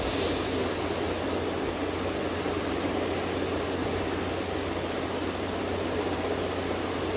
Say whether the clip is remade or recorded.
recorded